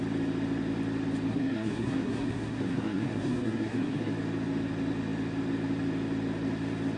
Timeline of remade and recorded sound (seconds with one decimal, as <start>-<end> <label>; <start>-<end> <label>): 0.0-1.3 recorded; 1.3-4.1 remade; 4.1-7.0 recorded